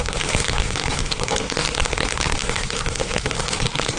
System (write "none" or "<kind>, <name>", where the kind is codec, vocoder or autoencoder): codec, SNAC